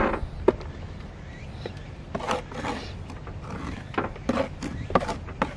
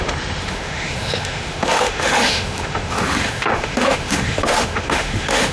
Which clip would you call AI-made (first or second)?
second